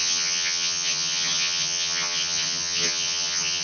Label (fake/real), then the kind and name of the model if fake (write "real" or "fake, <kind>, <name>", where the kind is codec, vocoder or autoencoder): fake, vocoder, HiFi-GAN